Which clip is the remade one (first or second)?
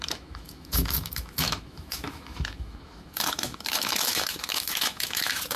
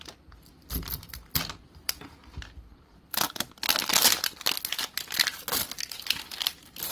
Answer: first